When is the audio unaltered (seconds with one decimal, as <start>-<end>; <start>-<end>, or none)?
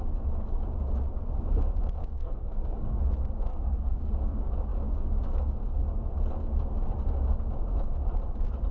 0.0-2.0; 3.0-3.5; 4.1-8.7